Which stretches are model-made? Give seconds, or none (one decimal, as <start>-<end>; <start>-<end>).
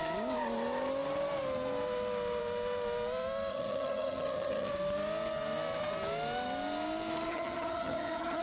3.5-4.7; 7.3-8.4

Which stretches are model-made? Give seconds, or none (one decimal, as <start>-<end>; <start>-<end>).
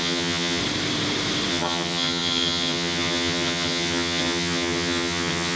0.0-0.6; 1.5-5.6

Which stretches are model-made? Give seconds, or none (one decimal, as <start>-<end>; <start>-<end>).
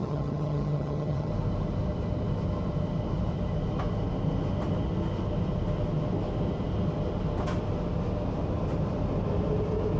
0.0-1.3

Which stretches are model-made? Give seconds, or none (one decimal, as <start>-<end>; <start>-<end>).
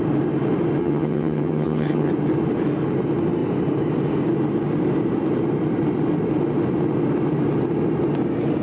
0.8-2.1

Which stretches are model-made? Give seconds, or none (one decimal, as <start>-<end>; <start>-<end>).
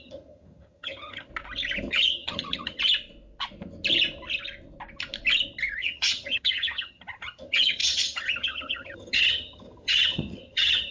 0.0-1.3; 1.9-2.8; 5.8-10.9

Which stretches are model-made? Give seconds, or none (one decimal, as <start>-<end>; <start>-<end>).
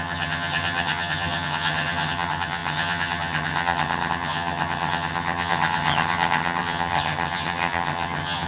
0.0-8.5